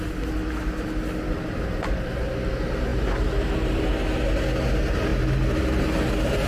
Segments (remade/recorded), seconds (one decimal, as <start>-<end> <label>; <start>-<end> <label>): 0.0-2.9 recorded; 2.9-3.9 remade; 3.9-5.1 recorded; 5.1-6.5 remade